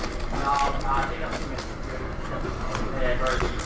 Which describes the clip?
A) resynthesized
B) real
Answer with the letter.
B